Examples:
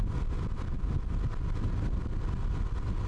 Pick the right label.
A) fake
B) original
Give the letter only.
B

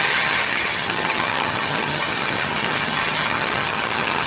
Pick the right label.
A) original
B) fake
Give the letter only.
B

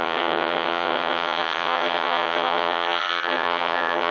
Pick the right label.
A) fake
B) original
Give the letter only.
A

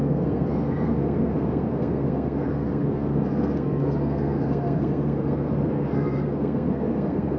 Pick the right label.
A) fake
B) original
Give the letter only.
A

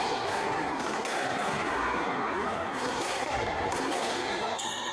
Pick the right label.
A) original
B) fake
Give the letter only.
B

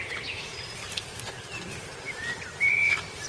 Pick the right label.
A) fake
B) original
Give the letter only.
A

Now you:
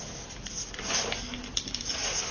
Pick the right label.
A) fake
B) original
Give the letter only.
B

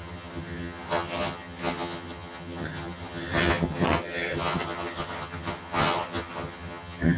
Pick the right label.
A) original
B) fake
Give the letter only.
B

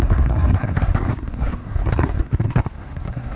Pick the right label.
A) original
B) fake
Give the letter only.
B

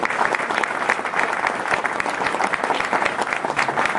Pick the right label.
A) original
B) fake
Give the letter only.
A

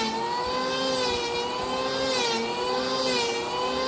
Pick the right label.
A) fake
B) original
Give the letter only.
B